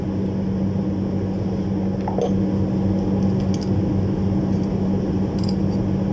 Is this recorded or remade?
recorded